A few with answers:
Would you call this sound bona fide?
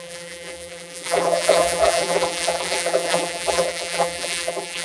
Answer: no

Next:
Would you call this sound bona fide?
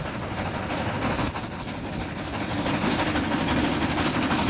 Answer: yes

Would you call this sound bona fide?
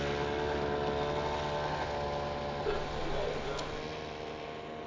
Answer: yes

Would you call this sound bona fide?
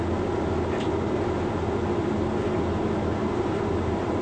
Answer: yes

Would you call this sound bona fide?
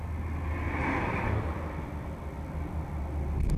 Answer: no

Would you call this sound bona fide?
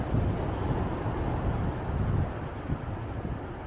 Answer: yes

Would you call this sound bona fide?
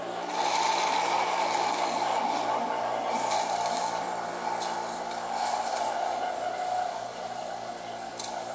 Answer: yes